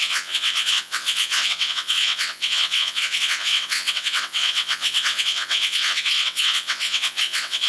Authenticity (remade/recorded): remade